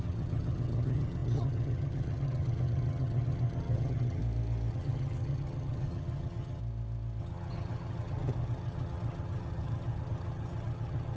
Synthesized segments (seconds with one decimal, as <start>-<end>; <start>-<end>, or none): 0.0-4.2; 4.7-6.6; 7.2-11.2